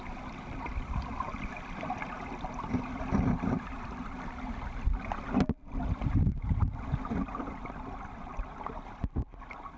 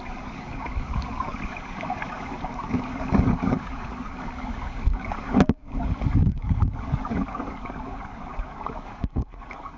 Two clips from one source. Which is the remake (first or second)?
second